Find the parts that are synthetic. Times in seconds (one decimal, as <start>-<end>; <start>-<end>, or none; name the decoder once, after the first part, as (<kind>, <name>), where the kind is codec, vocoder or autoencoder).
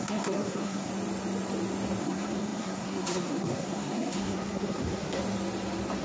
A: 0.0-0.9 (codec, SNAC); 2.0-5.2